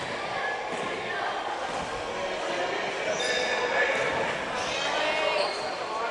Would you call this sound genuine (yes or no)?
yes